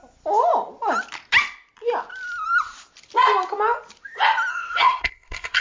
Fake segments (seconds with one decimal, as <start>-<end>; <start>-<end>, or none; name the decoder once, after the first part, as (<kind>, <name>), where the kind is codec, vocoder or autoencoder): 4.5-5.6 (codec, SNAC)